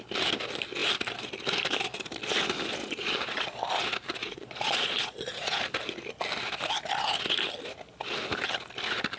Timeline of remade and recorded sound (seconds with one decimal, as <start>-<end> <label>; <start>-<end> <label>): 0.0-2.8 recorded; 2.8-3.6 remade; 3.6-4.2 recorded; 4.2-5.6 remade; 5.6-9.2 recorded